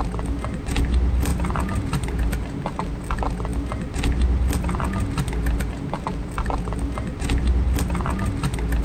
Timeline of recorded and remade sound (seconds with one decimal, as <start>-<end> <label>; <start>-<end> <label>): 0.0-1.3 recorded; 1.3-2.2 remade; 2.2-8.8 recorded